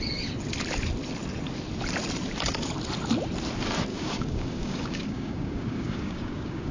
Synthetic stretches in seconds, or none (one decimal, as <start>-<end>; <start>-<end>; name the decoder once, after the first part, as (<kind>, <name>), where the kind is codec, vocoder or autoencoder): 3.9-6.7 (codec, DAC)